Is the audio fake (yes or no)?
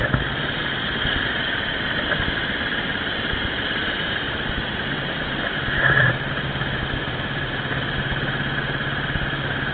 no